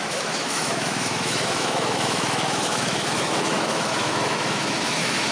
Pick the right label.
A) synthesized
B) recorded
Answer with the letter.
A